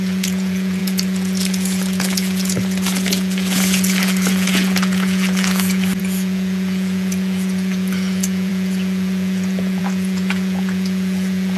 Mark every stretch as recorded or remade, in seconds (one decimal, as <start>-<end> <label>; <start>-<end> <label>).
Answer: 0.0-11.6 remade